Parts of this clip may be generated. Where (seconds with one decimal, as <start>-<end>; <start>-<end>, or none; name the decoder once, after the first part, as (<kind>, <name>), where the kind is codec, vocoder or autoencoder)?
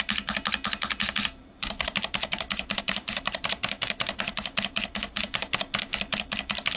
1.4-5.5 (vocoder, BigVGAN v2)